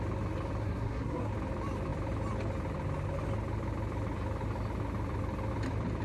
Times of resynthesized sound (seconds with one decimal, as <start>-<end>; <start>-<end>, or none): 0.6-1.3